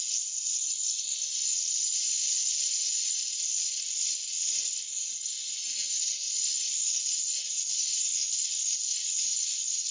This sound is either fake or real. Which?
real